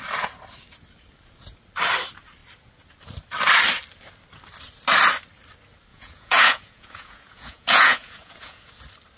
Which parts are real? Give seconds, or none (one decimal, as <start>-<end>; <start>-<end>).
0.0-5.9; 8.7-9.2